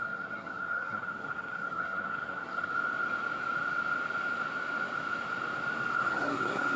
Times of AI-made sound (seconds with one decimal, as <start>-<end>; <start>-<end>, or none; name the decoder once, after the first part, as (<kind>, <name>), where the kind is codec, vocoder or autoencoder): 0.0-2.7 (codec, SNAC); 6.1-6.8